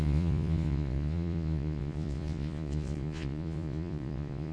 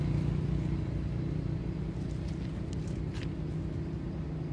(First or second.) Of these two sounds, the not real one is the first